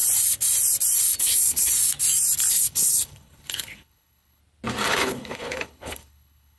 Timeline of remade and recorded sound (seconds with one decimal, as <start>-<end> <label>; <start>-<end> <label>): 0.0-1.2 recorded; 1.2-1.7 remade; 1.7-2.5 recorded; 2.5-4.4 remade; 4.4-4.9 recorded; 4.9-6.6 remade